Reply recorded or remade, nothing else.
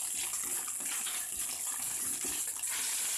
recorded